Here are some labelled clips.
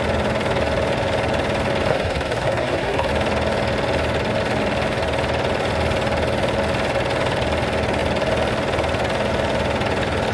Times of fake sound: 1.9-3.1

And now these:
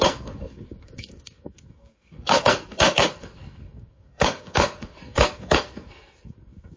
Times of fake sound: 0.0-6.8

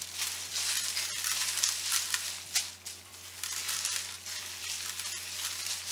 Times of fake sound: none

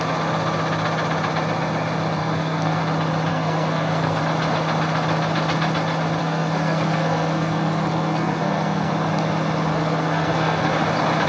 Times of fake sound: 2.2-2.8; 3.3-4.2; 6.2-8.9; 9.7-10.7

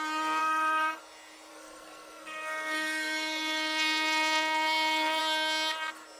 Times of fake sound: 0.4-1.0; 1.5-5.2